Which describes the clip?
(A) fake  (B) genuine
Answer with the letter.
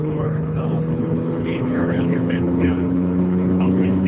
A